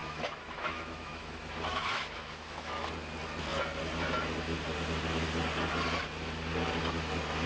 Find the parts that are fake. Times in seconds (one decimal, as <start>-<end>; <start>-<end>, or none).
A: 0.0-2.9